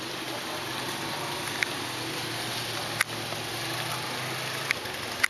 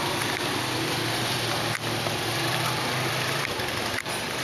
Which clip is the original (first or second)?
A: first